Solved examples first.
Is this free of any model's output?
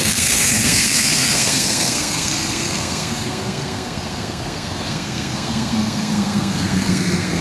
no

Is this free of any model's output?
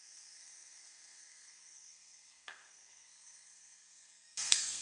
no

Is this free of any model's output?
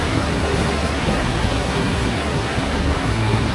no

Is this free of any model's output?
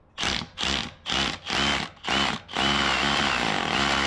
yes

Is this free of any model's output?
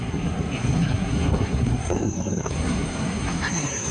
no